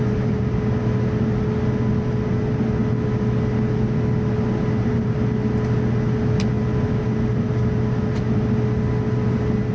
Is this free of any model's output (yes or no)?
yes